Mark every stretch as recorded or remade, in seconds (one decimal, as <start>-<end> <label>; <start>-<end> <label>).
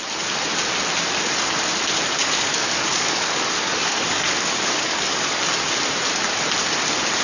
0.0-2.2 recorded; 2.2-5.4 remade; 5.4-7.2 recorded